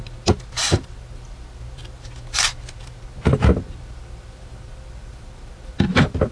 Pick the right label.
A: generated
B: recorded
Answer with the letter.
B